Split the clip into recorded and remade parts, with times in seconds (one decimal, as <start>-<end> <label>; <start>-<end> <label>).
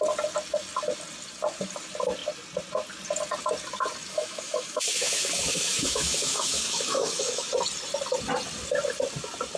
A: 0.0-4.1 recorded; 4.1-7.5 remade; 7.5-9.6 recorded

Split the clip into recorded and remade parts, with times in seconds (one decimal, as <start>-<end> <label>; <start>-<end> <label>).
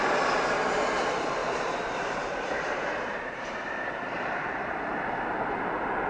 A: 0.0-1.4 recorded; 1.4-5.1 remade; 5.1-6.1 recorded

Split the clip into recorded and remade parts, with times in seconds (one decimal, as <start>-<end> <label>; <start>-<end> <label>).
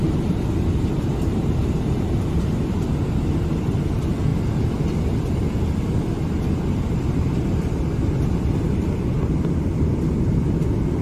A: 0.0-4.3 remade; 4.3-5.8 recorded; 5.8-11.0 remade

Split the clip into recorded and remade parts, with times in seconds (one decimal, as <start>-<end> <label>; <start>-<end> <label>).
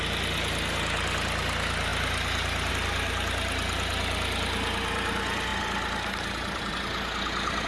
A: 0.0-7.7 recorded